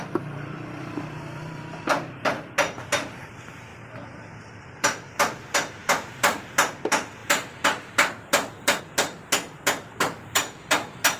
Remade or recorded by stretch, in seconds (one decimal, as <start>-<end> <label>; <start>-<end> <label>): 0.0-3.7 remade; 3.7-4.4 recorded; 4.4-11.2 remade